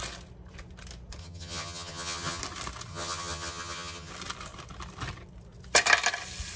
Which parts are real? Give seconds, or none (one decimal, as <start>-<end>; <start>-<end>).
0.0-1.2; 2.4-2.9; 4.1-6.6